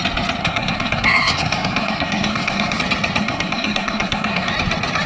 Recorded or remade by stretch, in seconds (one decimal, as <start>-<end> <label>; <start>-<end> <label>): 0.0-0.4 recorded; 0.4-2.8 remade; 2.8-3.2 recorded; 3.2-4.5 remade; 4.5-5.1 recorded